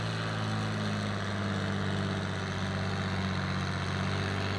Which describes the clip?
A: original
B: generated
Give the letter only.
A